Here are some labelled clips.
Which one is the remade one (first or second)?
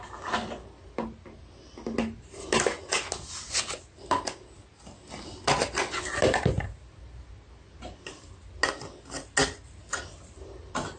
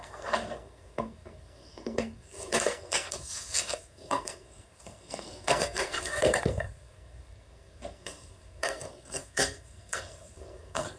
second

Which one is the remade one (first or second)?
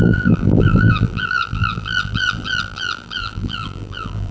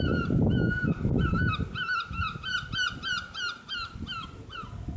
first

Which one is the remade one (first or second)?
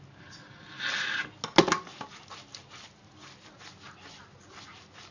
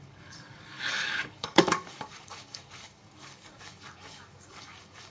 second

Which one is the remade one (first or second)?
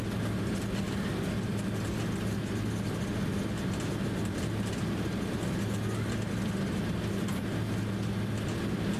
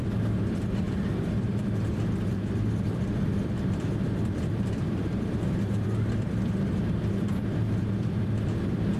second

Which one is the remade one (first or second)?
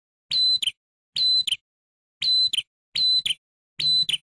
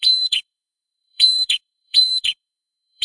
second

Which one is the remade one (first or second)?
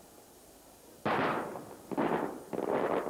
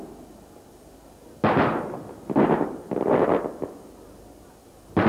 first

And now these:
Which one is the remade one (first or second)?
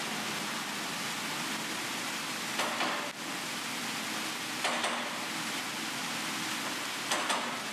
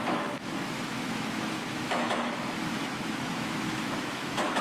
second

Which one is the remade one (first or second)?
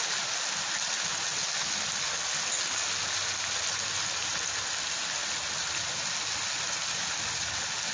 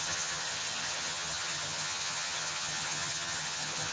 second